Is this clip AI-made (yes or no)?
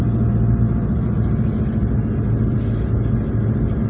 no